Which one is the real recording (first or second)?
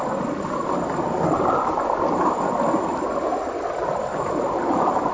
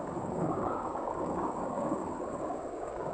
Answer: first